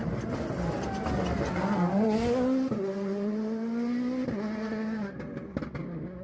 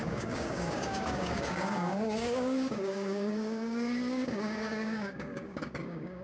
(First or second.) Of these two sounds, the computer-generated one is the second